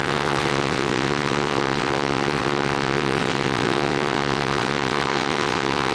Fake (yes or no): yes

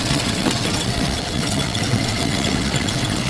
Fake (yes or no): yes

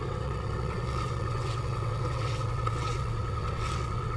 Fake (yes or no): yes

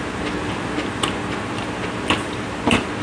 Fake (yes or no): no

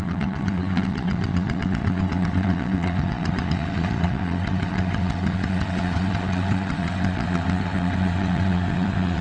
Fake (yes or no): yes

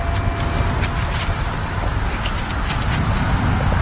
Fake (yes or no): no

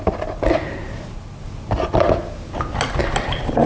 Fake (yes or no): no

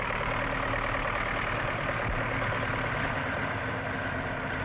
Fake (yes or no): no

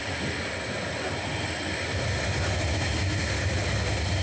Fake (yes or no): no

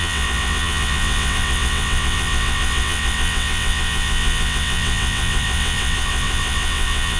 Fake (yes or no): yes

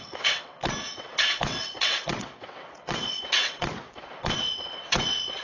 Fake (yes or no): yes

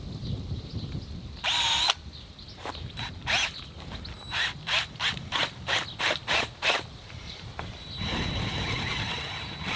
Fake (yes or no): no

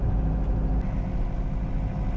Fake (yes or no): no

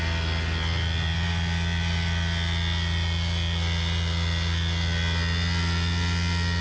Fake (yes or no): no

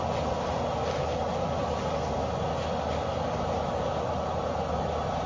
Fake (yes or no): no